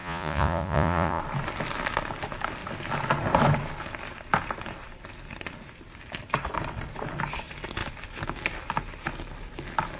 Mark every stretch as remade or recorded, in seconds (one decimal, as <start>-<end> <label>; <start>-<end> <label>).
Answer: 0.0-1.2 remade; 1.2-10.0 recorded